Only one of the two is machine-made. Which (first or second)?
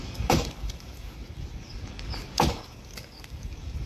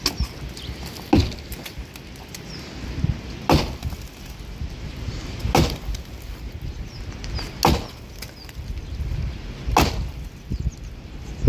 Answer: first